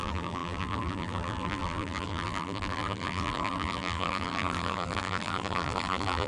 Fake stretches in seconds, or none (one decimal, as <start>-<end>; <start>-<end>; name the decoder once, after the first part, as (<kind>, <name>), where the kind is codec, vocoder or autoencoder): 0.0-6.3 (vocoder, BigVGAN v2)